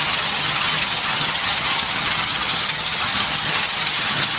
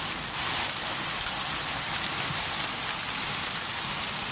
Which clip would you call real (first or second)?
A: second